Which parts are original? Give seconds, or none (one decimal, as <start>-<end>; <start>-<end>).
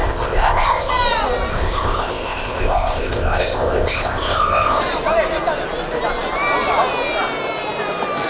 0.9-1.5; 4.8-8.3